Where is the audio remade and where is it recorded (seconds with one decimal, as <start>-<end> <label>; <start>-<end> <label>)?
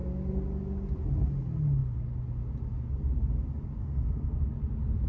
0.0-3.8 recorded; 3.8-4.4 remade; 4.4-5.1 recorded